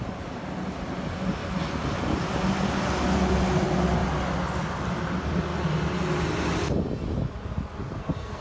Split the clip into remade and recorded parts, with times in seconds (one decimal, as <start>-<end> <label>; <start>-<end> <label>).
0.0-7.8 recorded; 7.8-8.4 remade